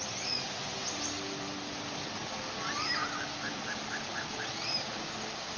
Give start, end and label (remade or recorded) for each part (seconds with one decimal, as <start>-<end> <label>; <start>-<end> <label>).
0.0-5.6 recorded